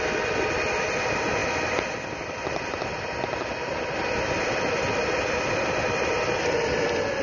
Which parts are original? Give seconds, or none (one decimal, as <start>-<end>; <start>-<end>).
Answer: 0.0-7.2